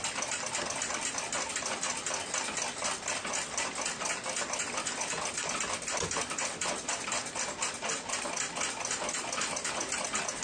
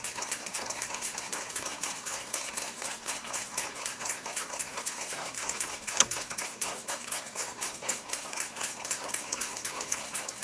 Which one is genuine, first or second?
first